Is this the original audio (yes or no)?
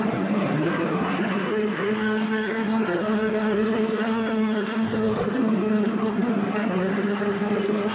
no